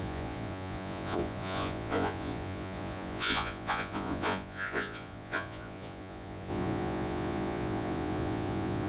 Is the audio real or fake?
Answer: fake